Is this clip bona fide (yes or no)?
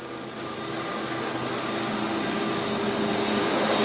yes